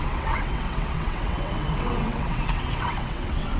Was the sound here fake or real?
fake